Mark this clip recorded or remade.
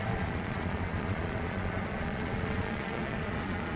remade